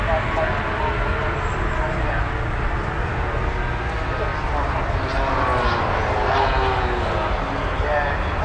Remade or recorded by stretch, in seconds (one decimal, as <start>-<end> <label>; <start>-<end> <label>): 0.0-8.4 recorded